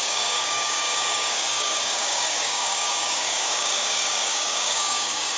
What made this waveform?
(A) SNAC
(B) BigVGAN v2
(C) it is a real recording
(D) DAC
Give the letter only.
D